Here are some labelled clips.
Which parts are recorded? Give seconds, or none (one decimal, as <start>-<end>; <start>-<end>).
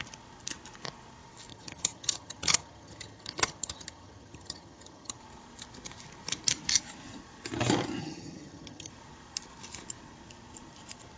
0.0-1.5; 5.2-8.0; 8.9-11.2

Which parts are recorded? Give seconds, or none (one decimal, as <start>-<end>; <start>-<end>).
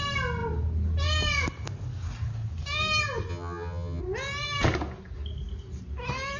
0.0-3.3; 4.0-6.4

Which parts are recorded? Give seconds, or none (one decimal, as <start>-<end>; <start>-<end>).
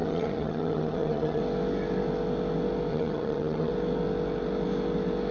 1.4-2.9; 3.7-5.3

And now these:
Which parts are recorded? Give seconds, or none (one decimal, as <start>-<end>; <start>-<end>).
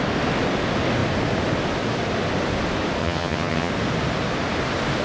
0.0-3.0; 3.7-5.0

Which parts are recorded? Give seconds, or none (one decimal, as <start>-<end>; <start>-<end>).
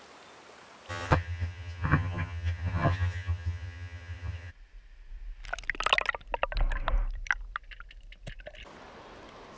0.0-0.9; 4.5-9.6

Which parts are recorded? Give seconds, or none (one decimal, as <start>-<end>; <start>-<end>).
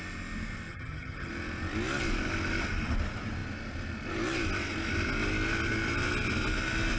0.0-0.7; 1.3-7.0